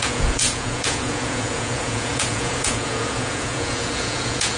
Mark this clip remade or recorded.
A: remade